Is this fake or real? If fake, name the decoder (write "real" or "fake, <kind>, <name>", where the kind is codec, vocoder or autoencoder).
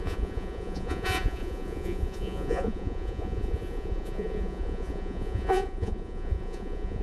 fake, vocoder, Vocos